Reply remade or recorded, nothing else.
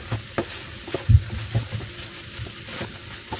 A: recorded